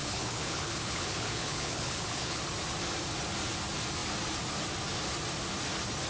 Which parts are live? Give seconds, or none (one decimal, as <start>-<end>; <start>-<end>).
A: 2.4-6.1